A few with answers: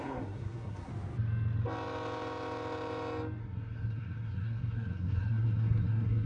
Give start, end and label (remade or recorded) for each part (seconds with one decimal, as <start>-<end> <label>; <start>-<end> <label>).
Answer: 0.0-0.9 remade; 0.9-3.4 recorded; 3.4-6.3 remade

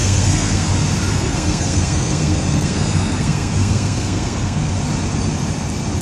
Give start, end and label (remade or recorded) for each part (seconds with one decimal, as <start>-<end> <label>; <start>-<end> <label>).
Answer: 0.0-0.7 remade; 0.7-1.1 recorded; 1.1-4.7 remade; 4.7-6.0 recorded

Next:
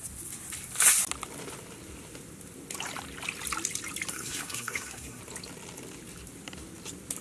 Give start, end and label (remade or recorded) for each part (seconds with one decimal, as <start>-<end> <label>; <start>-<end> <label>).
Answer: 0.0-4.1 recorded; 4.1-5.2 remade; 5.2-7.2 recorded

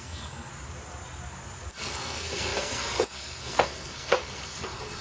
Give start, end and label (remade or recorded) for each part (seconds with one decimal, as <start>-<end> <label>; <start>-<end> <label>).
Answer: 0.0-0.5 remade; 0.5-1.7 recorded; 1.7-5.0 remade